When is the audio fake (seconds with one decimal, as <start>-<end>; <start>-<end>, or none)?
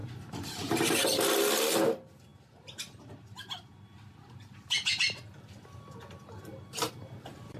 none